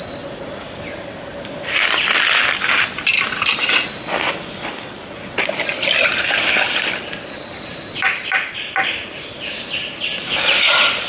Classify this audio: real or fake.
real